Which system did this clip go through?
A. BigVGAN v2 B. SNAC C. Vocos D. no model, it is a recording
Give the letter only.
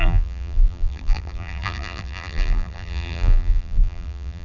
A